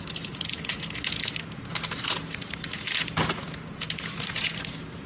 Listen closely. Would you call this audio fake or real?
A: real